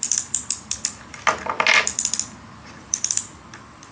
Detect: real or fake real